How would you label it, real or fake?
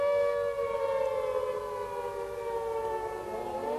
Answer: real